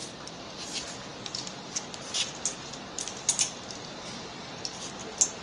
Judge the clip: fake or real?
real